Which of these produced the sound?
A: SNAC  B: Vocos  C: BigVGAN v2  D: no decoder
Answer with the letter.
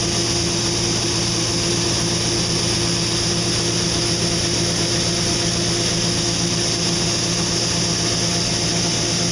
D